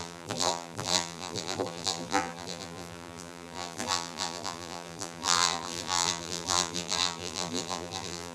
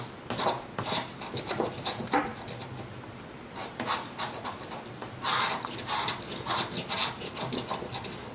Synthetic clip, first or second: first